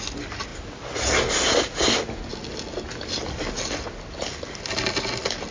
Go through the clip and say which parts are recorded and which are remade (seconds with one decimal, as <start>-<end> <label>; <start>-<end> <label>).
0.0-5.5 recorded